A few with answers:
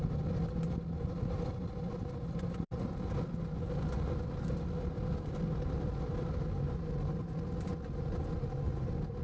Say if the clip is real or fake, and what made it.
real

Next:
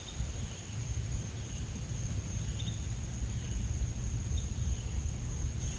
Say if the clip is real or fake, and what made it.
real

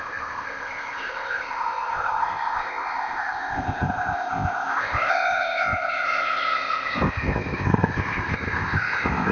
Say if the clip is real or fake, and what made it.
fake, codec, ZipCodec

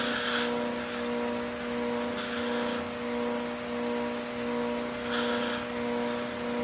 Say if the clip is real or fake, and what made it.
real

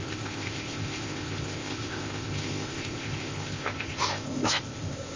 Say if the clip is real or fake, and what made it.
fake, codec, ZipCodec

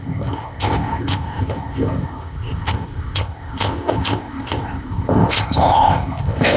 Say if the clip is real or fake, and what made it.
fake, codec, ZipCodec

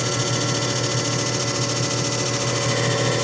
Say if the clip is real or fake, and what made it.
real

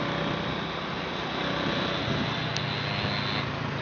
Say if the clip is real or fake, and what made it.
real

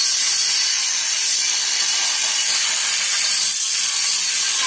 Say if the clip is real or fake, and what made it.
real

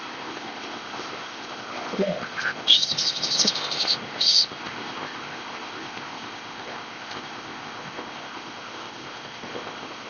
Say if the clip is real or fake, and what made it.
fake, codec, ZipCodec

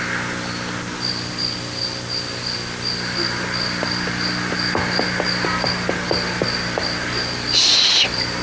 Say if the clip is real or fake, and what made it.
real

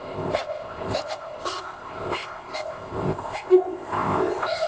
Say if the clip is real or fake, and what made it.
fake, codec, ZipCodec